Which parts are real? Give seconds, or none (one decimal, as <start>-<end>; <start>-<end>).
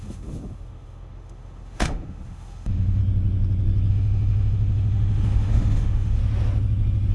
3.0-3.9; 6.2-7.1